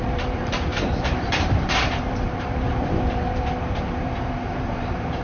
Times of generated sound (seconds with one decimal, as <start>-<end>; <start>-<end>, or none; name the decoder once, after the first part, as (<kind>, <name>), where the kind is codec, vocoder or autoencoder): 0.0-5.2 (vocoder, BigVGAN v2)